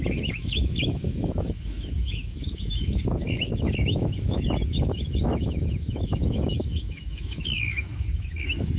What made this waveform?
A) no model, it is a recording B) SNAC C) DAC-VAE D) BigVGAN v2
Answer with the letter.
C